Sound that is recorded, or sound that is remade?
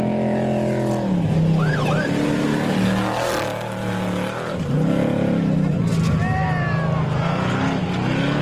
recorded